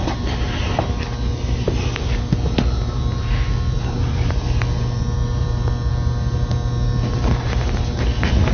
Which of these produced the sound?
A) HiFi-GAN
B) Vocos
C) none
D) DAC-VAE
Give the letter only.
C